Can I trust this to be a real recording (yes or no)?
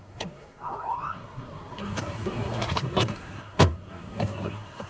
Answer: no